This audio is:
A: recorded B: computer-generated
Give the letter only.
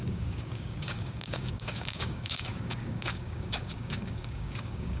B